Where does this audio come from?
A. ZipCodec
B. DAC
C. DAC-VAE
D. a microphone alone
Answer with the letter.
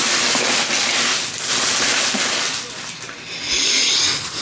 D